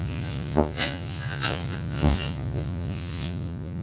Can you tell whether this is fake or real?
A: fake